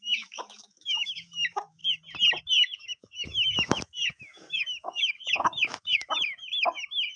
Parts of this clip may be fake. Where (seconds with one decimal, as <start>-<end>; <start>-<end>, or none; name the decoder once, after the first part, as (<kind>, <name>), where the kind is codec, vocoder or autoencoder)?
0.0-1.8 (autoencoder, DAC-VAE); 2.4-7.2